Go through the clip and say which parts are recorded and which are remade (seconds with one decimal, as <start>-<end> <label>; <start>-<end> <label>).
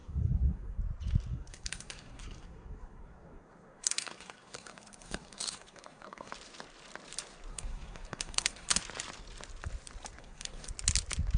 0.0-0.8 remade; 0.8-1.3 recorded; 1.3-6.3 remade; 6.3-7.5 recorded; 7.5-8.8 remade; 8.8-10.2 recorded; 10.2-10.7 remade; 10.7-11.4 recorded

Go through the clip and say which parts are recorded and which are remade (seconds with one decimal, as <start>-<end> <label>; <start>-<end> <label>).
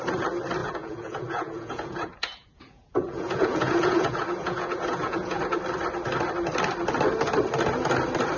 0.0-0.6 recorded; 0.6-5.4 remade; 5.4-8.4 recorded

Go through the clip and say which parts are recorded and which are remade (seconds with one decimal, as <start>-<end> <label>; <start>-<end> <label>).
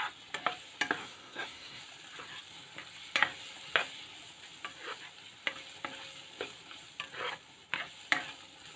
0.0-1.0 recorded; 1.0-1.8 remade; 1.8-8.8 recorded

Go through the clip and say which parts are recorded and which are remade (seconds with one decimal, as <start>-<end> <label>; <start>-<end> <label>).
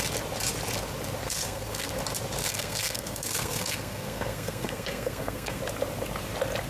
0.0-1.2 recorded; 1.2-1.9 remade; 1.9-2.4 recorded; 2.4-5.6 remade; 5.6-6.7 recorded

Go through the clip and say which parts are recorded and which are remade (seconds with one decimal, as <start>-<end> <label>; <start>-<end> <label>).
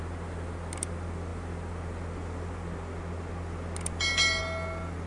0.0-5.1 recorded